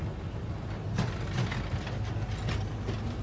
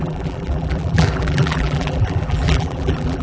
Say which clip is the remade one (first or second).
second